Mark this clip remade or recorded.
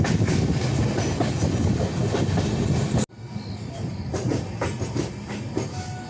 recorded